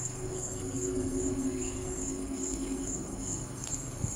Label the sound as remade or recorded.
remade